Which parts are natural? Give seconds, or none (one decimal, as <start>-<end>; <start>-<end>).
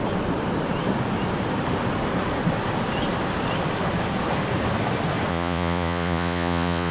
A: 0.0-5.3